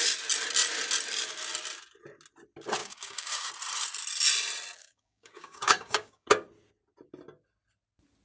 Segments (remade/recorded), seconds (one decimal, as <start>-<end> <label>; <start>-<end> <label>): 0.0-2.8 recorded; 2.8-3.5 remade; 3.5-4.8 recorded; 4.8-6.3 remade; 6.3-8.2 recorded